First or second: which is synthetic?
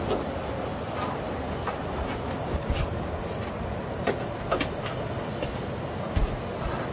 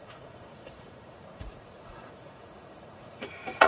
second